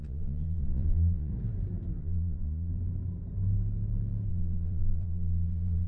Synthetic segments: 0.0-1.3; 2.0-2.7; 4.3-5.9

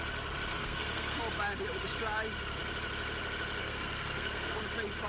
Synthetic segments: 0.5-1.2; 3.6-4.6

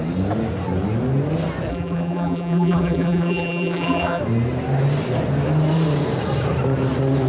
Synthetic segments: 1.7-4.2

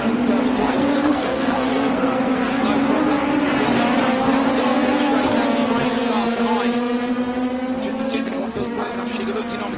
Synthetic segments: 0.6-2.6; 7.9-8.9

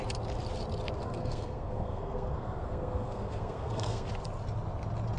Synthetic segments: 1.0-4.1

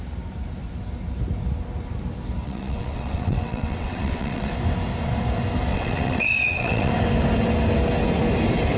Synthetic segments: 2.4-4.5; 5.7-6.9